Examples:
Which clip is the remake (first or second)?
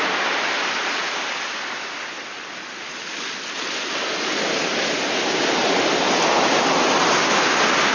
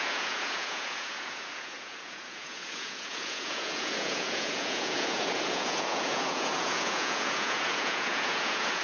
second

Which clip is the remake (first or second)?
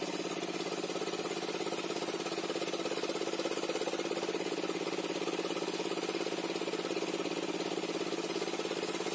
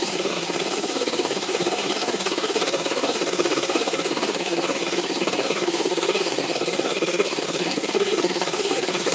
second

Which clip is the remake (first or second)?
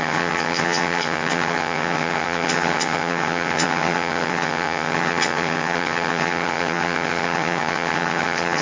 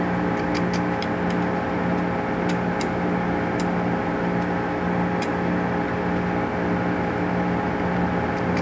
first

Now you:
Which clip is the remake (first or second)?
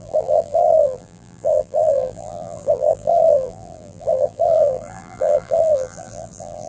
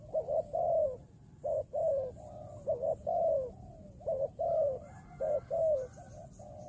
first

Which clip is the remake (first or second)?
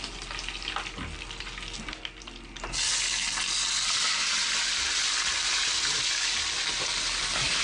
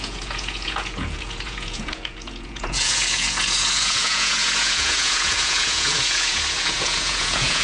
second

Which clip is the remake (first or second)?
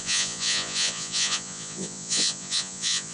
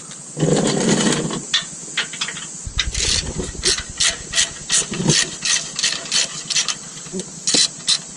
first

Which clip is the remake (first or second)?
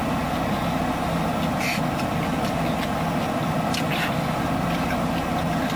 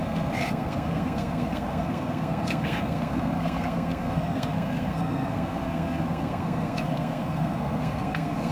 second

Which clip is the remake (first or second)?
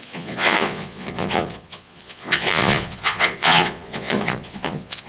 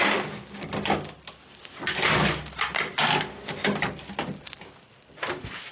first